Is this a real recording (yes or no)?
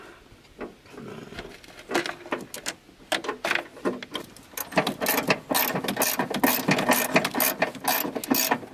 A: yes